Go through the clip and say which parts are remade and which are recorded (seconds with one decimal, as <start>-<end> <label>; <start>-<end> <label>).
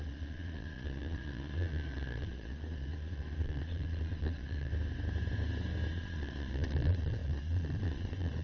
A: 0.0-4.7 remade; 4.7-5.9 recorded; 5.9-8.4 remade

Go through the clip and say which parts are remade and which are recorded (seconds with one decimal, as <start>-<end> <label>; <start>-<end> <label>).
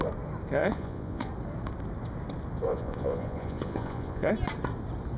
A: 0.0-0.6 recorded; 0.6-1.3 remade; 1.3-2.7 recorded; 2.7-4.3 remade; 4.3-5.2 recorded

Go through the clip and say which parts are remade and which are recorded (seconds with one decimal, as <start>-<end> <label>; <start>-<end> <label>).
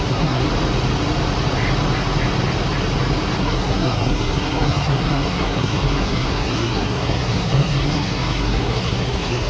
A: 0.0-0.4 remade; 0.4-3.4 recorded; 3.4-9.5 remade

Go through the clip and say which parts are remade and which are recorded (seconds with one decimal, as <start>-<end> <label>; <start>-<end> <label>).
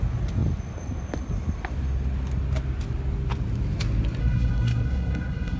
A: 0.0-4.2 recorded; 4.2-5.6 remade